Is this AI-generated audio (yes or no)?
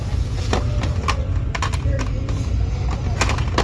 no